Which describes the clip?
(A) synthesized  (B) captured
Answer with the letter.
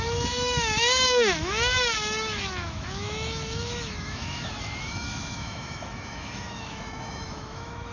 A